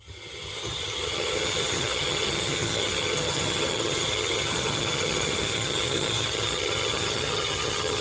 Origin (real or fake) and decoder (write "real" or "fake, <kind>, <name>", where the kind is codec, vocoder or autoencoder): fake, vocoder, HiFi-GAN